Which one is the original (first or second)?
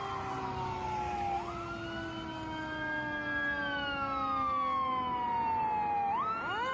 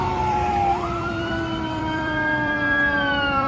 first